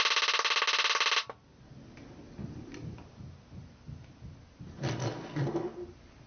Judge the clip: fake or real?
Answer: real